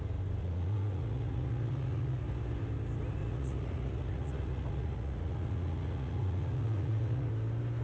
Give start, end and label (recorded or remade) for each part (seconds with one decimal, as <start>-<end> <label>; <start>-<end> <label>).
0.0-0.4 recorded; 0.4-2.2 remade; 2.2-3.2 recorded; 3.2-7.3 remade; 7.3-7.8 recorded

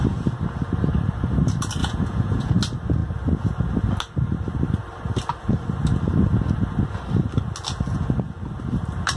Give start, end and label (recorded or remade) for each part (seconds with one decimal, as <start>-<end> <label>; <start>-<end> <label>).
0.0-1.8 recorded; 1.8-2.5 remade; 2.5-9.2 recorded